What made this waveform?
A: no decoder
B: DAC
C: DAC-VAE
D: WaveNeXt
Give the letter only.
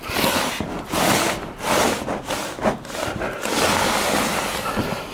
A